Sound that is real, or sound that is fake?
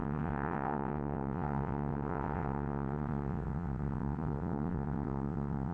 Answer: fake